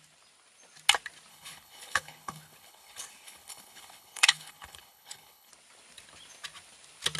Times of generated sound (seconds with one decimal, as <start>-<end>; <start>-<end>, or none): 1.3-5.5